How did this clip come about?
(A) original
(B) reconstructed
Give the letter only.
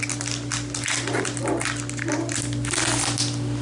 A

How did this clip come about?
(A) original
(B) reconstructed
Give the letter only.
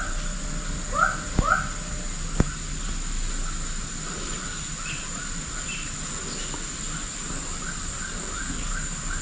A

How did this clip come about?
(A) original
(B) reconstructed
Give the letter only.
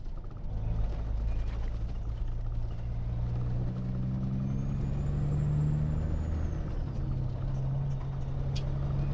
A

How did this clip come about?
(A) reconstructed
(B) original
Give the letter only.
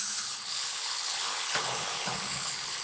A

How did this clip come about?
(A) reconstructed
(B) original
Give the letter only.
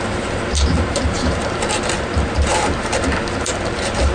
A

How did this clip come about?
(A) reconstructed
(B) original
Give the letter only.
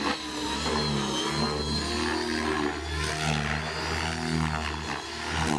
B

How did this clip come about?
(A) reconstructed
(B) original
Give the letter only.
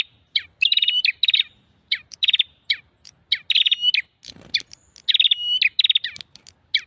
B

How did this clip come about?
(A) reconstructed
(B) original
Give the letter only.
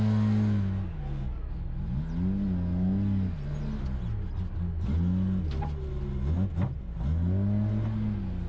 B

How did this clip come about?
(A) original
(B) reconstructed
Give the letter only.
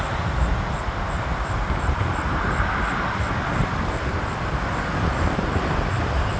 A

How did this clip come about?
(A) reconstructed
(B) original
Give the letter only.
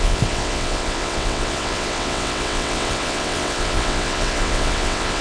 A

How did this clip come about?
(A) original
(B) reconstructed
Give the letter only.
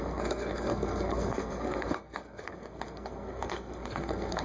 B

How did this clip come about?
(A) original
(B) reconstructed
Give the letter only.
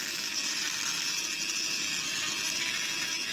A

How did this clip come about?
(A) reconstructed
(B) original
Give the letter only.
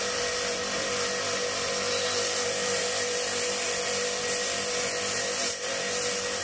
B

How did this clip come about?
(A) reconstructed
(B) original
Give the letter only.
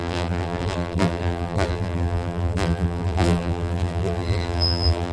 A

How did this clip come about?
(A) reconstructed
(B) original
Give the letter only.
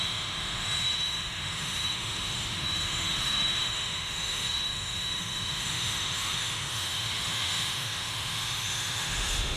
A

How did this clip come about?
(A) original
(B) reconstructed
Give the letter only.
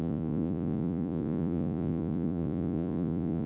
B